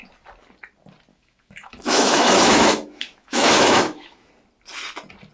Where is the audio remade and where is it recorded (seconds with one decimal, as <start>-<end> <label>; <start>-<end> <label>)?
0.0-1.1 recorded; 1.1-4.3 remade; 4.3-5.3 recorded